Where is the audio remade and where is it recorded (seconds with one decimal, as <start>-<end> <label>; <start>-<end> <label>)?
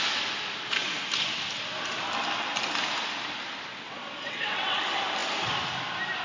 0.0-3.7 recorded; 3.7-4.8 remade; 4.8-6.2 recorded